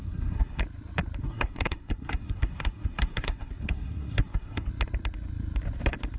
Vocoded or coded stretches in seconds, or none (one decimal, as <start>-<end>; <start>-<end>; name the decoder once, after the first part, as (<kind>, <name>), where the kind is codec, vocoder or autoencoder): 0.0-0.6 (codec, SNAC); 1.2-4.7